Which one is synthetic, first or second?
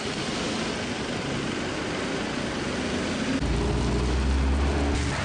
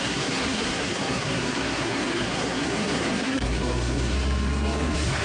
second